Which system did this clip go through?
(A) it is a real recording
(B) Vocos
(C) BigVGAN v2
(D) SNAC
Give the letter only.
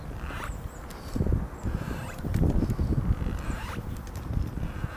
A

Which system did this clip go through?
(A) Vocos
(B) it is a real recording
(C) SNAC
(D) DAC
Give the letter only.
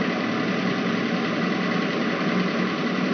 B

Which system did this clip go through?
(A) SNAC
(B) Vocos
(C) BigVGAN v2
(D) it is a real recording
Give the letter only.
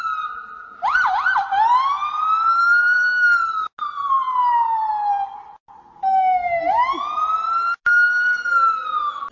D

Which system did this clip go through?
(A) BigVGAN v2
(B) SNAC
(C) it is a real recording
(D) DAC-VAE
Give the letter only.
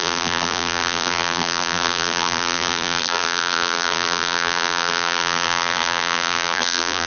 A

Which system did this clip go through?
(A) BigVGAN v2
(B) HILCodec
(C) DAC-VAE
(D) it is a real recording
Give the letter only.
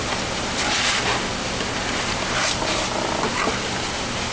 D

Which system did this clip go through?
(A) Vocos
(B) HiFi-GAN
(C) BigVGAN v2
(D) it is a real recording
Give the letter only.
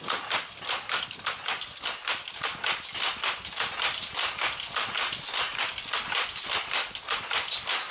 D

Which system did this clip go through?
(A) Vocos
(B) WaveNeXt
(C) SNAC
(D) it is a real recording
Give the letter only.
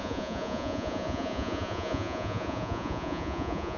A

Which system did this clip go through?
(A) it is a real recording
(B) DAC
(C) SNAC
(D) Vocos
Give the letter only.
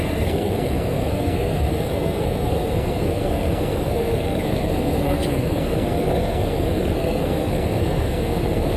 C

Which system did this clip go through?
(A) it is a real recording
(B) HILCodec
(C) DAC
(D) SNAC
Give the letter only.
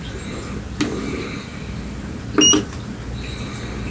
A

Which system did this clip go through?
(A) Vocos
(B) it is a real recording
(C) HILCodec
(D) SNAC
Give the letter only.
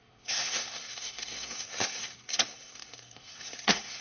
D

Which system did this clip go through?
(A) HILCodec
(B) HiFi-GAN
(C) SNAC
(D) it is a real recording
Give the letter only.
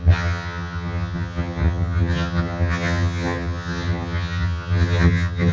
B